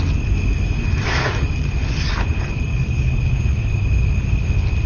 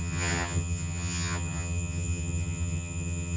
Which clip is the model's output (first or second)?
second